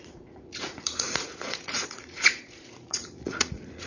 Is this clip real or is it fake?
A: fake